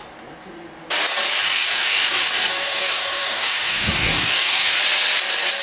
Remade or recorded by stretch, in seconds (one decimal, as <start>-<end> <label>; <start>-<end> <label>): 0.0-1.4 recorded; 1.4-4.8 remade; 4.8-5.6 recorded